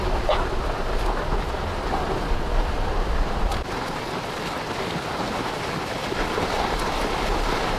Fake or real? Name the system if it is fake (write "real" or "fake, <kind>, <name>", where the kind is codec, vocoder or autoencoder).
real